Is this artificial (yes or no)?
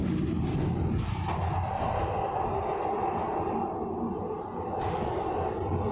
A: no